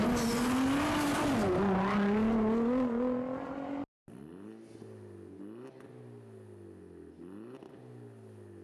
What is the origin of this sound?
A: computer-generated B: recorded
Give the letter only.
B